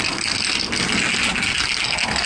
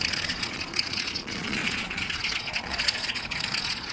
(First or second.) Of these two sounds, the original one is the first